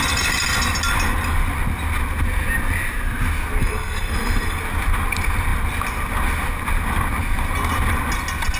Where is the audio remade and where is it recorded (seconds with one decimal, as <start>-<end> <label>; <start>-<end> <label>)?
0.0-3.6 recorded; 3.6-4.6 remade; 4.6-8.6 recorded